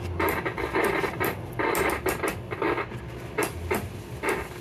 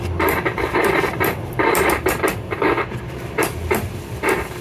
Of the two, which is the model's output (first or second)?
second